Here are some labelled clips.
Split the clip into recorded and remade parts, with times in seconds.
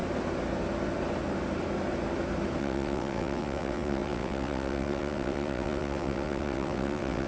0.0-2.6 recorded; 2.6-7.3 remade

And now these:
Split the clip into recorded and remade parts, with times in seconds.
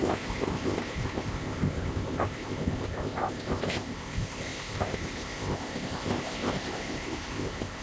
0.0-7.8 remade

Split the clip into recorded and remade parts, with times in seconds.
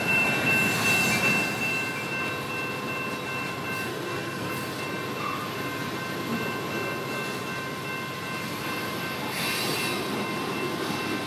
0.0-3.9 recorded; 3.9-4.5 remade; 4.5-11.3 recorded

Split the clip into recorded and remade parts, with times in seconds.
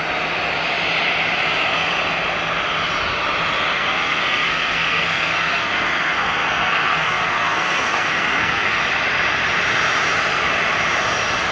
0.0-3.7 recorded; 3.7-8.8 remade; 8.8-11.5 recorded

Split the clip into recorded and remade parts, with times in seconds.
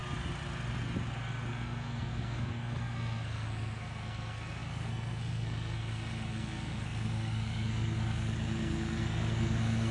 0.0-1.5 recorded; 1.5-9.9 remade